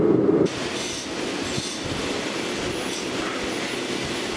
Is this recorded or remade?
recorded